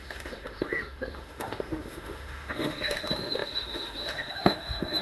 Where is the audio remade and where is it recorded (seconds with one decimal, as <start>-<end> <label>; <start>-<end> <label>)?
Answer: 0.0-5.0 remade